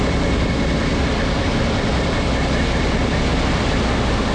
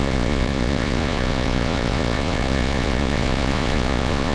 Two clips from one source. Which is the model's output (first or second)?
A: second